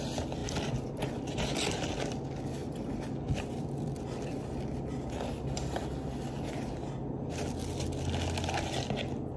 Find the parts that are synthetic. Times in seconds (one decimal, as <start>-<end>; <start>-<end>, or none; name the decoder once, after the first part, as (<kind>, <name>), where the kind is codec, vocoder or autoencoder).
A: none